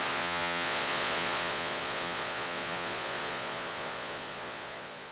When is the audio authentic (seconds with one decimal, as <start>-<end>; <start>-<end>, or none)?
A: none